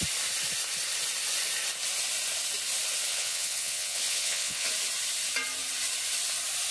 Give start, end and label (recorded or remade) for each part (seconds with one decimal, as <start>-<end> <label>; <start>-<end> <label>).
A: 0.0-3.1 recorded; 3.1-4.7 remade; 4.7-6.7 recorded